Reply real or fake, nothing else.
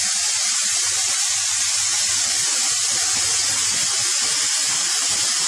real